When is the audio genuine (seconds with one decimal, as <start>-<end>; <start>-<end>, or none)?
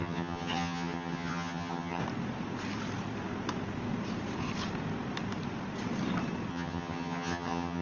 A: 2.0-6.5